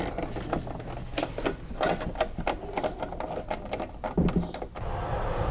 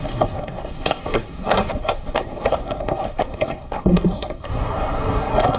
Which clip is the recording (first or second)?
first